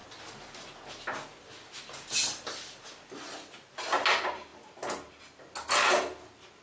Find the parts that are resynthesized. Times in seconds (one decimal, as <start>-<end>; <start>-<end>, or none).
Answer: none